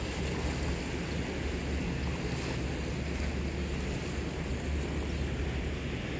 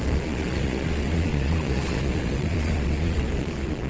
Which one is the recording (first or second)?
first